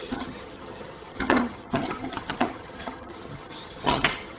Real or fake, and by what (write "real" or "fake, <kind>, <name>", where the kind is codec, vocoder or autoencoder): fake, vocoder, HiFi-GAN